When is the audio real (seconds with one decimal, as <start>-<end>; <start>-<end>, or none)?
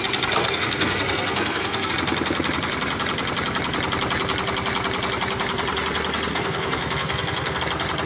0.0-0.4; 1.9-6.3; 7.6-8.1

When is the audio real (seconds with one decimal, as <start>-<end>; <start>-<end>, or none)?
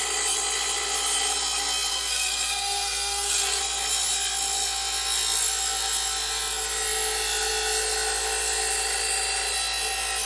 0.0-1.9; 3.6-10.3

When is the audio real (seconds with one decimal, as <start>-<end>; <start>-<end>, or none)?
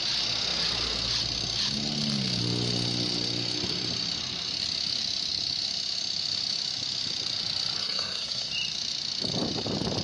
0.0-7.8; 8.5-10.0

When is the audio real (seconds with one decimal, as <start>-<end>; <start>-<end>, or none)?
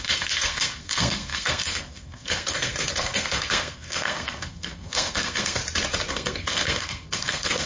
5.6-6.1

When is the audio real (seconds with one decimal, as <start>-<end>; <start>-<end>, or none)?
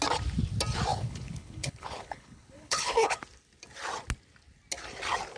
0.0-0.9; 3.2-5.4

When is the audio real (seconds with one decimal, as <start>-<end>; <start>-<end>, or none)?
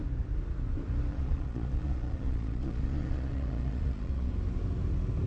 0.0-1.1; 4.3-5.3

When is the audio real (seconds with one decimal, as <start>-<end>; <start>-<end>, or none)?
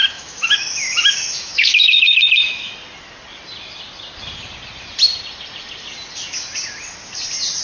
2.7-7.6